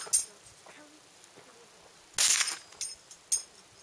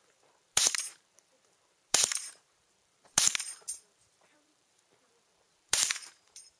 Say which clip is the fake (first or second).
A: second